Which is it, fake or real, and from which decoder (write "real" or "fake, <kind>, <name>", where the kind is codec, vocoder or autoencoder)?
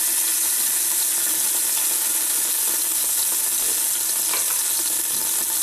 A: real